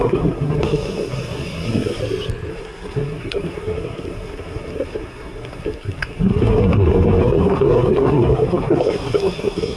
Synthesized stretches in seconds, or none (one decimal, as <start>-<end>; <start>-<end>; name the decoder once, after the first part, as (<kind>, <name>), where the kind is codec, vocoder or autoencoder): 0.0-2.0 (codec, SNAC); 2.5-9.8